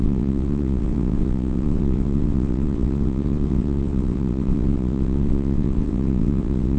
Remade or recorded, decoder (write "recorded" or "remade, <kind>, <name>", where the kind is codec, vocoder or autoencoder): remade, vocoder, WaveNeXt